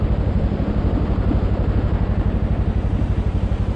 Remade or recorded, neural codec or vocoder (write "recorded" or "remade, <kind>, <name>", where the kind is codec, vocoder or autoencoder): recorded